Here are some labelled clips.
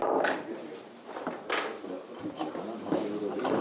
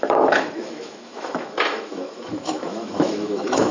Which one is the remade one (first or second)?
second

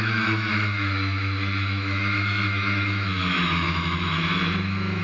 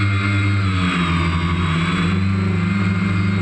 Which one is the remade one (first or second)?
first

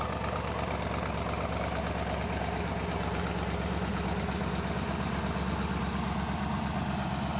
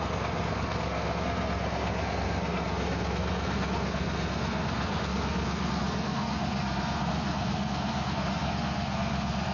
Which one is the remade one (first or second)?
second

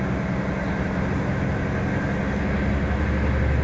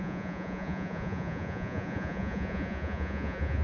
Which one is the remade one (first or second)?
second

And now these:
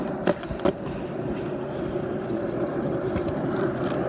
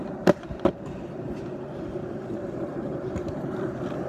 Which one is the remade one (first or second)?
second